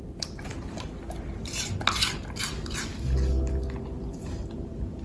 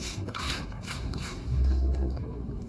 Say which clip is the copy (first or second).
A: second